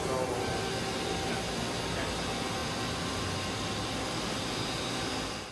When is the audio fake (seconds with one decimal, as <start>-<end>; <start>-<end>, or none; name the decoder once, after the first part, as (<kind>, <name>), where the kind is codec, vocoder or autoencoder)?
none